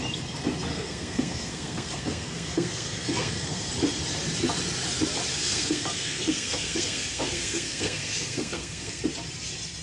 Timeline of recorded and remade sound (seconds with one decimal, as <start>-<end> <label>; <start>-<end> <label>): 0.0-0.7 recorded; 0.7-3.7 remade; 3.7-5.3 recorded; 5.3-9.0 remade; 9.0-9.8 recorded